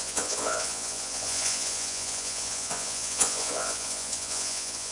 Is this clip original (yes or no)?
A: no